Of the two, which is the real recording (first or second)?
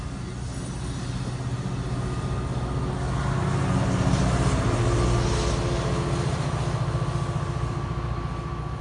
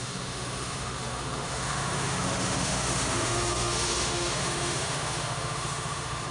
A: first